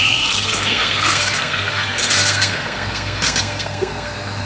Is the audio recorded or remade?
remade